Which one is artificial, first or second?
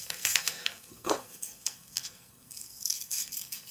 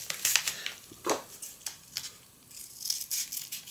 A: first